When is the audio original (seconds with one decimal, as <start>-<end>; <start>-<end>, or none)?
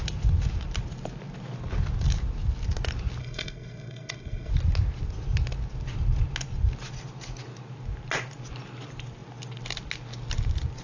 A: 0.0-3.2; 4.5-10.8